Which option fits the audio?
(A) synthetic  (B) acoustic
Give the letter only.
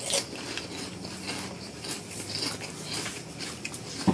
B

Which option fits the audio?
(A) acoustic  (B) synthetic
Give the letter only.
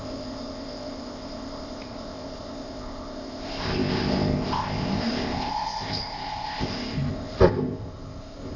B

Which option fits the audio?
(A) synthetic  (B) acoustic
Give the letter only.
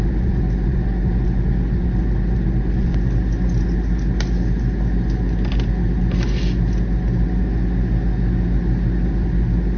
B